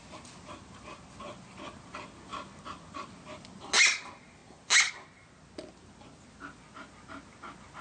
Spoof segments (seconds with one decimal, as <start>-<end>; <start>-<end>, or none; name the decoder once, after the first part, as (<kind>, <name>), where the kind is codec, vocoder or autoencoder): none